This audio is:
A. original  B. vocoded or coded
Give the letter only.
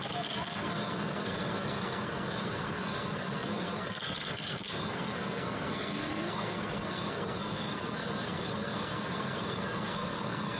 B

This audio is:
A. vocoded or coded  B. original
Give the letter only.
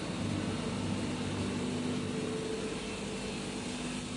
B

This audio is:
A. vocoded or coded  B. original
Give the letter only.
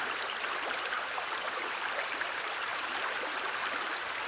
B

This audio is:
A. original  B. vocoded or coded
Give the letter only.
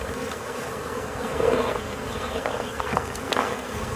B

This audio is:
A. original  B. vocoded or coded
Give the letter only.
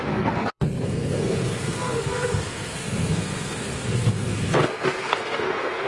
B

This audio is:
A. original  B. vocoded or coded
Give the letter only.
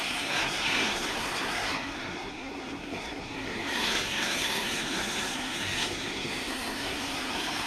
B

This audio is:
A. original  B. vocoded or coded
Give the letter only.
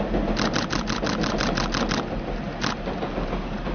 A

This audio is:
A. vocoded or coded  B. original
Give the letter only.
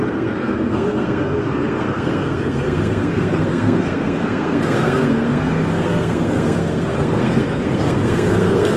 A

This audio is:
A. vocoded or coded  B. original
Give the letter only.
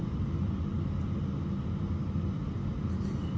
B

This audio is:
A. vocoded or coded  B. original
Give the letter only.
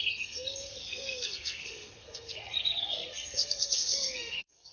A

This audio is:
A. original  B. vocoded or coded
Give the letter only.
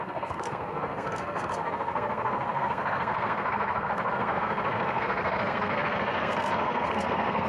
B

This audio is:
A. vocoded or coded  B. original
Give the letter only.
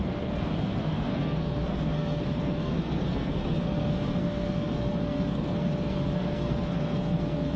A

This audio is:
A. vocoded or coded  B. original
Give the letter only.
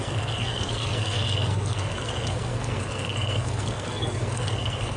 A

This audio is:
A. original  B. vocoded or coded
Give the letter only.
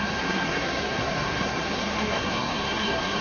B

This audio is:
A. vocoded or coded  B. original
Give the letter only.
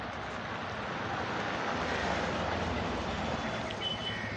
B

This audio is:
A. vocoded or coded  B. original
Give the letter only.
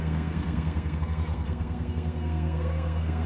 A